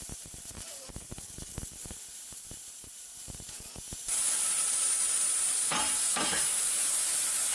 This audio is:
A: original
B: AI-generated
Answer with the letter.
B